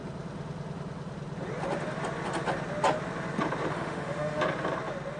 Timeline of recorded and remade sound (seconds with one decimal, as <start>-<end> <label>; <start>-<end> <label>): 0.0-3.7 recorded; 3.7-4.4 remade; 4.4-5.2 recorded

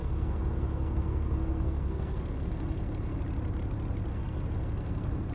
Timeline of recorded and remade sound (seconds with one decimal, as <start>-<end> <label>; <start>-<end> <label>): 0.0-3.2 remade; 3.2-4.1 recorded; 4.1-5.3 remade

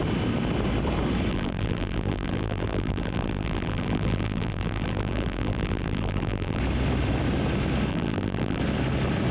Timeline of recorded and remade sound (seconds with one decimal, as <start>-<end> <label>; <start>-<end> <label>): 0.0-1.3 recorded; 1.3-6.6 remade; 6.6-7.9 recorded; 7.9-8.6 remade; 8.6-9.3 recorded

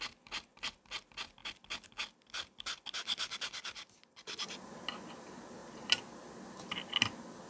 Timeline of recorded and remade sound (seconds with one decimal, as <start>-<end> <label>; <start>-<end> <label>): 0.0-7.5 recorded

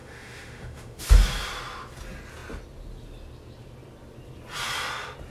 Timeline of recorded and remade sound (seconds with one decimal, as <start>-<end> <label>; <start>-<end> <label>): 0.0-1.0 remade; 1.0-5.3 recorded

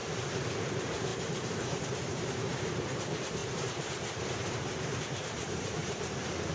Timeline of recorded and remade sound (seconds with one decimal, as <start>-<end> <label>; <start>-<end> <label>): 0.0-0.7 recorded; 0.7-6.5 remade